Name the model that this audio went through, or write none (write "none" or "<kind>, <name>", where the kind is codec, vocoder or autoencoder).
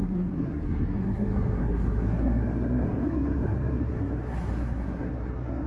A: codec, SNAC